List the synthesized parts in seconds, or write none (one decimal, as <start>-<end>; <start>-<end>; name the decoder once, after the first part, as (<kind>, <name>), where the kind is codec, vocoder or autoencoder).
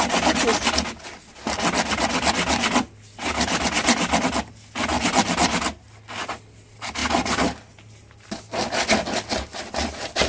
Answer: none